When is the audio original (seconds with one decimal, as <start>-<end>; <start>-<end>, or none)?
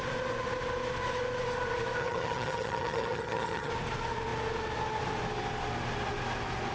0.0-2.0; 3.7-6.7